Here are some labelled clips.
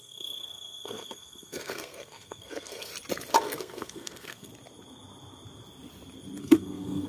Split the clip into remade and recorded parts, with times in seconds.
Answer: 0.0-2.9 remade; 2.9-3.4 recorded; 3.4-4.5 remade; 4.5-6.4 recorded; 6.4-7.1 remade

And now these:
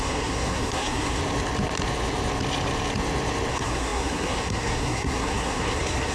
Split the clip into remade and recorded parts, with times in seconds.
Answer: 0.0-1.2 remade; 1.2-3.5 recorded; 3.5-6.1 remade

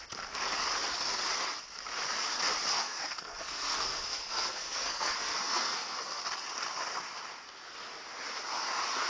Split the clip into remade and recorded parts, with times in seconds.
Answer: 0.0-2.7 recorded; 2.7-6.2 remade; 6.2-9.1 recorded

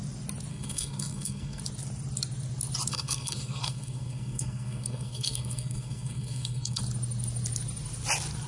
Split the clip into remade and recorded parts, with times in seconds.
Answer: 0.0-0.5 recorded; 0.5-1.6 remade; 1.6-2.9 recorded; 2.9-6.8 remade; 6.8-8.5 recorded

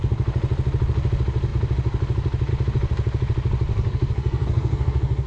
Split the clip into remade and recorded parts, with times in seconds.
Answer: 0.0-3.7 recorded; 3.7-5.3 remade

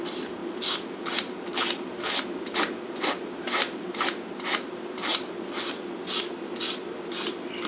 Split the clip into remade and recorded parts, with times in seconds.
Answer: 0.0-7.7 recorded